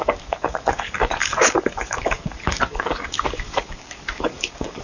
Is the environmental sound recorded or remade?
remade